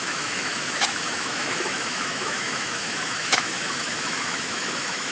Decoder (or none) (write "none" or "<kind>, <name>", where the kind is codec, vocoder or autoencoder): autoencoder, DAC-VAE